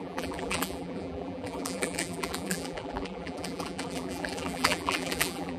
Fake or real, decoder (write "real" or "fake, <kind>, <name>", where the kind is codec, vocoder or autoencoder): fake, vocoder, BigVGAN v2